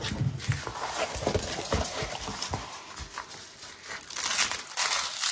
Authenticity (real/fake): real